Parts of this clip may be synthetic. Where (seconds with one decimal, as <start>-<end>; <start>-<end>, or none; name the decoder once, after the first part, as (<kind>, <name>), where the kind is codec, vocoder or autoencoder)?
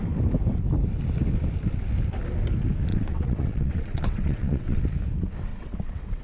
2.9-4.8 (vocoder, WaveNeXt); 5.5-6.2